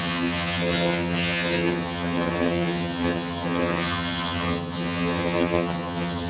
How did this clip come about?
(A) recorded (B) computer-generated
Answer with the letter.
B